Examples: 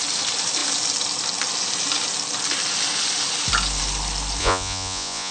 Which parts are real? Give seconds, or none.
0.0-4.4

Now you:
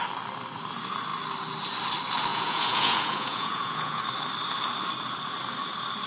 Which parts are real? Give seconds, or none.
0.0-2.3; 4.0-6.1

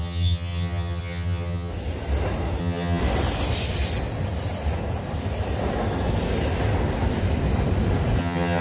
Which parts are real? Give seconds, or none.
1.7-2.6; 3.0-8.2